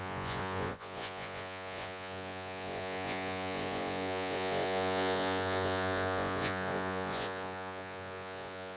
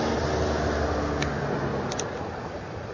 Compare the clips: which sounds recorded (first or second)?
second